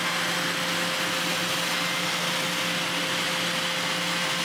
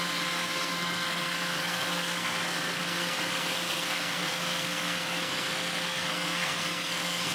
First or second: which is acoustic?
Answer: first